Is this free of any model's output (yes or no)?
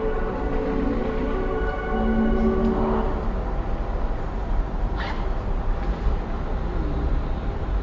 yes